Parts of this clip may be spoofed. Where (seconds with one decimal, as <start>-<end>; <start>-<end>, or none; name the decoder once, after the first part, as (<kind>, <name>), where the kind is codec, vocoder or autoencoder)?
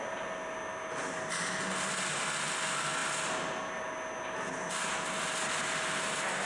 none